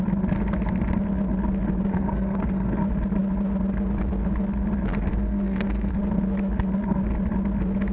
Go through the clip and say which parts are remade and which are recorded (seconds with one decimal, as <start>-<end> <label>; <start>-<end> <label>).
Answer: 0.0-1.9 recorded; 1.9-2.8 remade; 2.8-5.1 recorded; 5.1-5.9 remade; 5.9-7.9 recorded